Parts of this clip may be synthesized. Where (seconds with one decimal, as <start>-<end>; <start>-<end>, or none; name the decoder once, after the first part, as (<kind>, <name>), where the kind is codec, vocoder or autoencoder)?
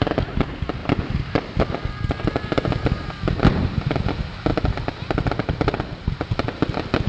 0.8-1.9 (vocoder, BigVGAN v2); 4.5-5.6